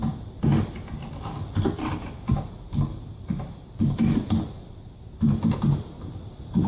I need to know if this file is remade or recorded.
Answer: recorded